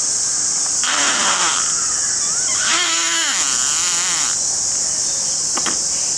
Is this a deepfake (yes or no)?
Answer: no